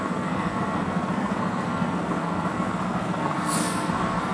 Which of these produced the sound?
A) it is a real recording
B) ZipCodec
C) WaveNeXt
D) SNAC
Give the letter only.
D